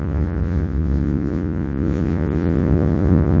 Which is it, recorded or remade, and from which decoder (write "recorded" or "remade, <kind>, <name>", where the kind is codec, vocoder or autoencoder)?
remade, vocoder, Vocos